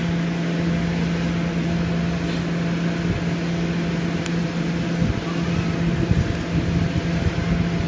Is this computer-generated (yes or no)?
no